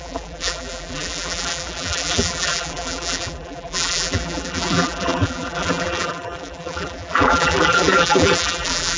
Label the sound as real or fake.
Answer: fake